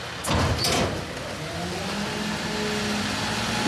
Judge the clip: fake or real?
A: real